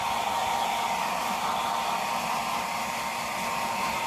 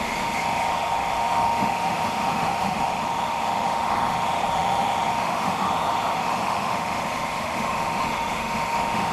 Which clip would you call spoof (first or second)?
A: second